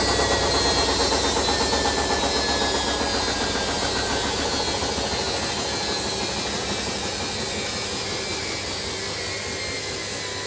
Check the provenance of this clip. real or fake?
real